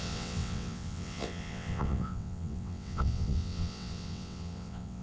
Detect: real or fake fake